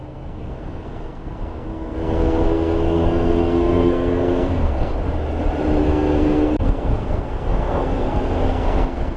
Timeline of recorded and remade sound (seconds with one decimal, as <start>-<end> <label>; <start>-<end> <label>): 0.0-4.9 remade; 4.9-5.8 recorded; 5.8-9.2 remade